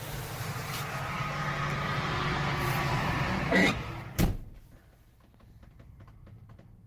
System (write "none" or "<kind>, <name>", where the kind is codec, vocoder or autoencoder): none